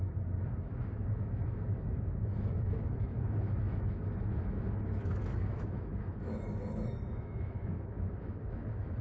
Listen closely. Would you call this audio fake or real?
fake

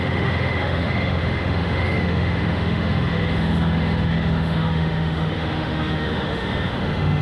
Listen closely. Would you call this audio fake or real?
fake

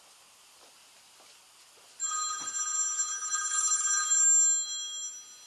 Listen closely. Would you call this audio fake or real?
real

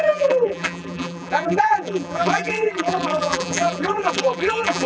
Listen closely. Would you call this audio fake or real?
fake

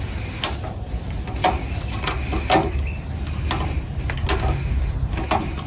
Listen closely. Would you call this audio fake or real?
real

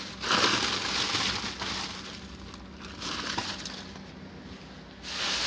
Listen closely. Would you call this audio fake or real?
real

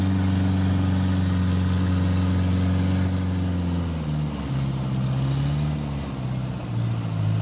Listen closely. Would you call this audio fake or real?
real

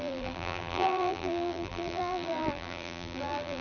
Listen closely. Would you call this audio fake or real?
fake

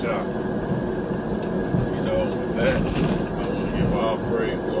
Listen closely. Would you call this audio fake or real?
real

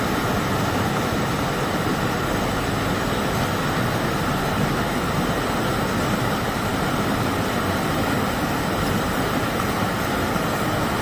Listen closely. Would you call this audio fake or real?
real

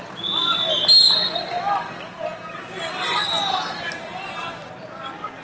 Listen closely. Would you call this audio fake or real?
real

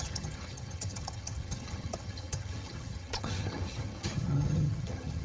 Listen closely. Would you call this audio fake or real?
fake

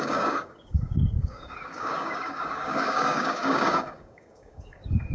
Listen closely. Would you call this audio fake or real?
fake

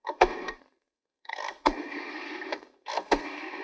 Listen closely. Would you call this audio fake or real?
fake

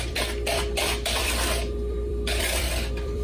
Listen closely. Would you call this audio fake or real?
fake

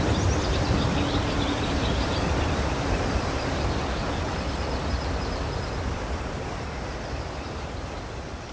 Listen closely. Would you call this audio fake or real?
real